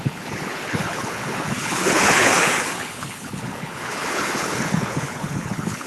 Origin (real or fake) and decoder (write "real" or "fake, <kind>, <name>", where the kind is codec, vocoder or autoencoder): fake, codec, HILCodec